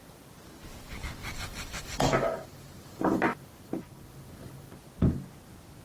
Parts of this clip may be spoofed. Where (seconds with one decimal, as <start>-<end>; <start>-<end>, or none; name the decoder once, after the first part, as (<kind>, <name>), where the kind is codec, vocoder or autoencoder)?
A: 1.2-4.7 (vocoder, BigVGAN v2)